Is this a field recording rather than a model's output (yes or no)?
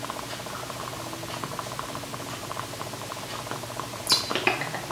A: yes